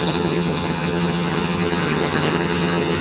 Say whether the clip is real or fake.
fake